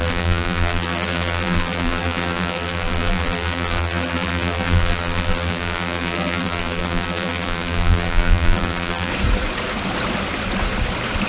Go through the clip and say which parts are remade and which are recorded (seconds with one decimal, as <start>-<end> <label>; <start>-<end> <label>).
0.0-9.1 remade; 9.1-11.3 recorded